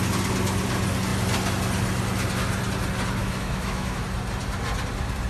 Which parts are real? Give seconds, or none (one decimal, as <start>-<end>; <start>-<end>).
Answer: 0.0-3.2; 4.0-5.3